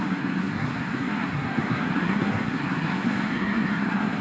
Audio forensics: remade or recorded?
remade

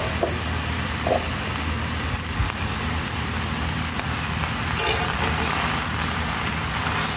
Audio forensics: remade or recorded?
recorded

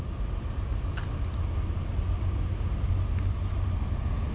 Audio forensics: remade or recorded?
recorded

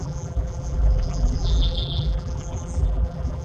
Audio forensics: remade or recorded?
remade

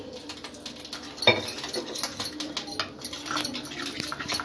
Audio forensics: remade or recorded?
recorded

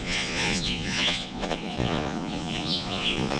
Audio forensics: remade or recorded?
remade